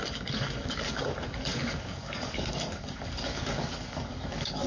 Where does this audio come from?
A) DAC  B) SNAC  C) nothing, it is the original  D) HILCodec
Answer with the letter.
A